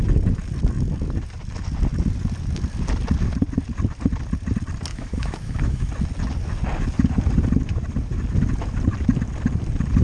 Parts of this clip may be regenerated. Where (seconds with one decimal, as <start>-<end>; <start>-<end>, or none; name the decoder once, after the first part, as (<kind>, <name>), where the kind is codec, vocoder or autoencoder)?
4.9-5.9 (autoencoder, DAC-VAE)